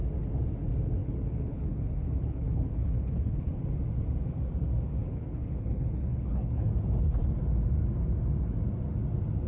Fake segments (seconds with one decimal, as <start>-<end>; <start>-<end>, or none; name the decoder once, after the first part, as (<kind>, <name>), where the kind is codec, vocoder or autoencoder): 1.0-3.5 (codec, HILCodec); 5.0-6.7